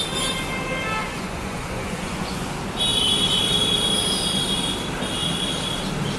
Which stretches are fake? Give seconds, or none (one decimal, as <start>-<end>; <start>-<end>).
1.0-2.5